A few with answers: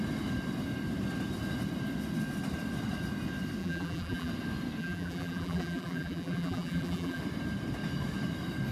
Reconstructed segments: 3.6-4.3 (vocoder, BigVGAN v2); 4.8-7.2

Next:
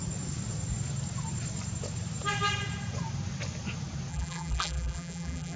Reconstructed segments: 4.1-5.6 (vocoder, BigVGAN v2)

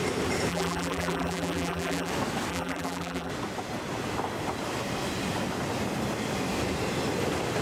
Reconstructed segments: 0.5-2.1 (vocoder, BigVGAN v2); 2.5-3.3

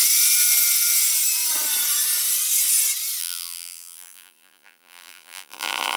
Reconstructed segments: 3.2-6.0 (vocoder, BigVGAN v2)